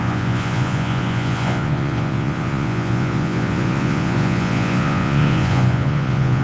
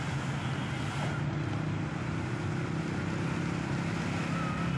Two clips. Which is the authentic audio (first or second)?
second